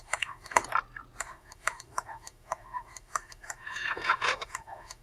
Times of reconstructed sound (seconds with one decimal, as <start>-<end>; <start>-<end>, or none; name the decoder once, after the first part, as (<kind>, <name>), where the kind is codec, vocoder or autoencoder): 0.0-0.6 (autoencoder, DAC-VAE); 1.2-5.0